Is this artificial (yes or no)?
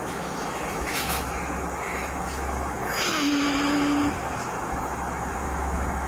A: yes